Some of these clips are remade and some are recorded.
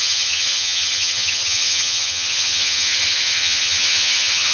remade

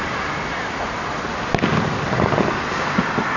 recorded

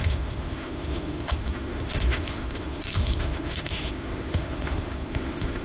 remade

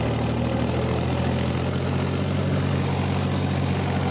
recorded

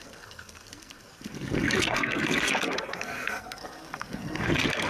remade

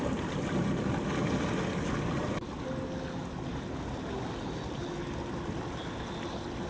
recorded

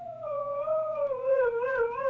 remade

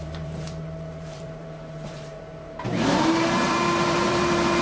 remade